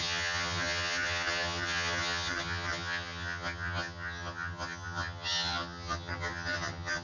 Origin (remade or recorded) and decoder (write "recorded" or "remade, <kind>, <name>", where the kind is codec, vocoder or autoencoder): remade, vocoder, HiFi-GAN